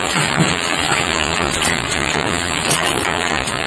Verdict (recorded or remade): remade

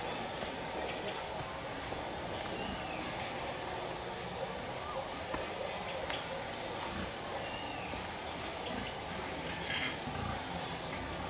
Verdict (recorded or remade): recorded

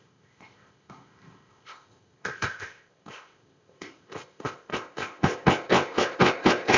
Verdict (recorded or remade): remade